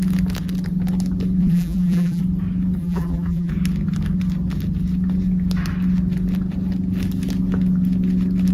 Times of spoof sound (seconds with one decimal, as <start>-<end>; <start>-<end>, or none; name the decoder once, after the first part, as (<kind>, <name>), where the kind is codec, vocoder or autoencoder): 1.4-2.2 (vocoder, BigVGAN v2); 2.8-3.5